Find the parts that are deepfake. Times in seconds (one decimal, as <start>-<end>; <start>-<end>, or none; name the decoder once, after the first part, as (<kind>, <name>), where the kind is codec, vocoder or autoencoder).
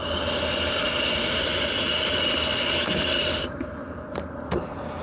none